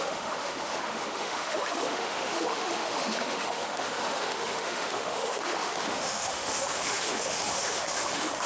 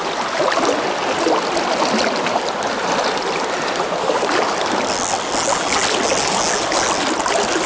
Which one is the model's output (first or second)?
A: first